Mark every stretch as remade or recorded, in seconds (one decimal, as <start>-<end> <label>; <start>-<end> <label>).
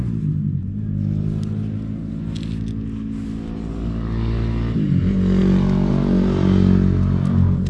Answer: 0.0-7.7 recorded